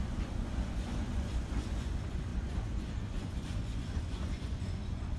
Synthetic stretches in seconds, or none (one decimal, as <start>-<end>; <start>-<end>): 0.0-5.2